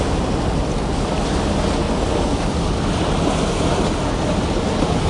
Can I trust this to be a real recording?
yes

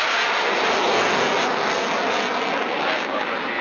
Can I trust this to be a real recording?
yes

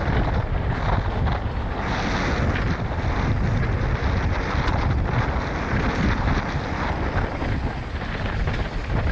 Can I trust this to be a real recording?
yes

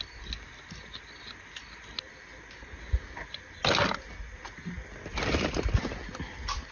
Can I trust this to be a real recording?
yes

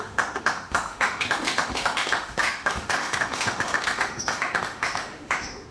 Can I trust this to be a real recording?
no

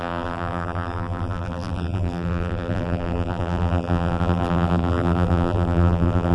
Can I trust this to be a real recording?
no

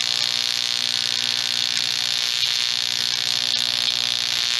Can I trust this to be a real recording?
yes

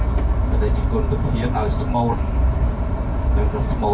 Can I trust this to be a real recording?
yes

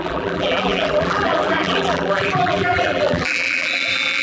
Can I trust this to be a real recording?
no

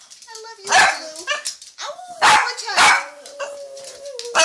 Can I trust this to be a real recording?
yes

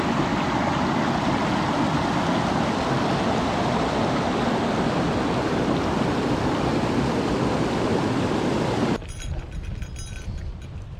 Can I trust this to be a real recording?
yes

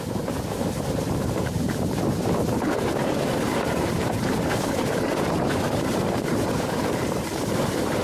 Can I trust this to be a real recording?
no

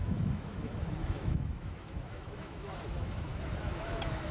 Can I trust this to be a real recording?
no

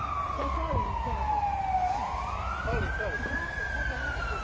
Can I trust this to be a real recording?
yes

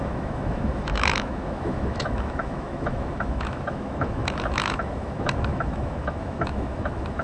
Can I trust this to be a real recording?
no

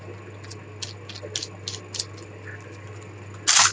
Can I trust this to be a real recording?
yes